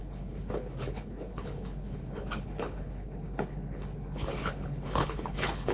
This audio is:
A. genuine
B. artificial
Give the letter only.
B